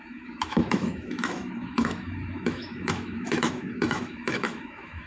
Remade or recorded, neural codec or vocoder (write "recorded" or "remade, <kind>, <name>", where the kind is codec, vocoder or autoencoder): remade, autoencoder, DAC-VAE